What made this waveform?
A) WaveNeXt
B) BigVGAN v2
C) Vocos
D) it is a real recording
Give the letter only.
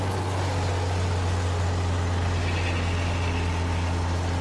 D